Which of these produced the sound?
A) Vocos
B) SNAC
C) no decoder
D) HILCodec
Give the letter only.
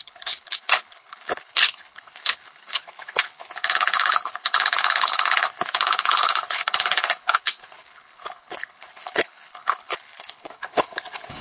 D